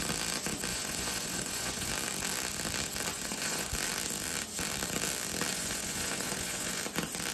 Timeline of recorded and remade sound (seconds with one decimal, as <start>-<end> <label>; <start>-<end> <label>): 0.0-0.7 recorded; 0.7-1.9 remade; 1.9-3.1 recorded; 3.1-3.7 remade; 3.7-5.5 recorded; 5.5-6.8 remade; 6.8-7.3 recorded